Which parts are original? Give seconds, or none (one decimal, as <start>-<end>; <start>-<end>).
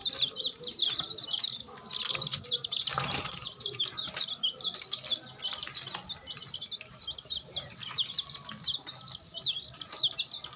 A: 1.2-2.3; 3.8-10.6